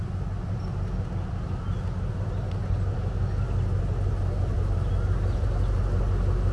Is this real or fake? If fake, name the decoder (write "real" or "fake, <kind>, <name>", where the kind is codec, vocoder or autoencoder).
real